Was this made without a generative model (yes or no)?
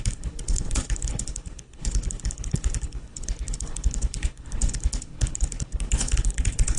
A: no